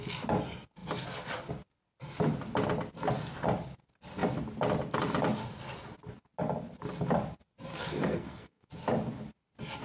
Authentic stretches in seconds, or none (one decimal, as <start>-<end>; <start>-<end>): 0.0-7.7; 8.7-9.8